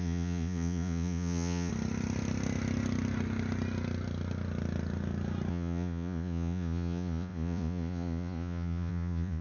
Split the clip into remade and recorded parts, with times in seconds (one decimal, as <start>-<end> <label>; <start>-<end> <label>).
0.0-1.7 remade; 1.7-5.5 recorded; 5.5-9.4 remade